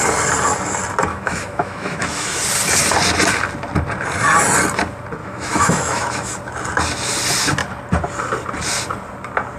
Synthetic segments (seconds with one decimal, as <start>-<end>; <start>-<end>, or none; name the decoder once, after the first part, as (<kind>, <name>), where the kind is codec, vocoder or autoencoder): 1.1-2.4 (autoencoder, DAC-VAE); 5.2-6.3